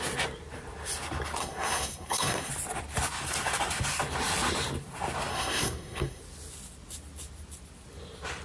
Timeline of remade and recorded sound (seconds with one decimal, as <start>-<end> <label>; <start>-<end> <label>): 0.0-1.4 recorded; 1.4-2.5 remade; 2.5-5.3 recorded; 5.3-6.2 remade; 6.2-8.4 recorded

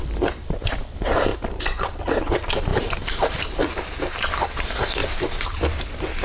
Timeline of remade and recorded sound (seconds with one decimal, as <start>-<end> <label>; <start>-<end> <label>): 0.0-6.2 remade